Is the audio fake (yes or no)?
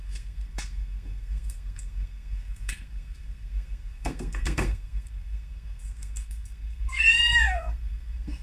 yes